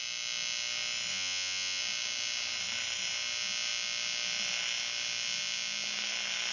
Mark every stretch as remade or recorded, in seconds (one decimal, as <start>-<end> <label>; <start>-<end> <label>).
0.0-1.1 recorded; 1.1-1.8 remade; 1.8-6.5 recorded